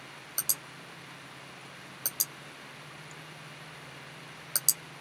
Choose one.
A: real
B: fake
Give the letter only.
A